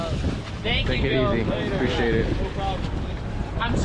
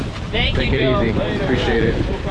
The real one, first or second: first